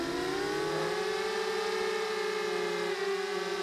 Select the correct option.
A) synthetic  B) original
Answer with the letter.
B